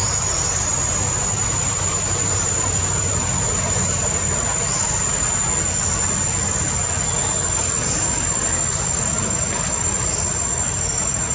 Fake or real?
real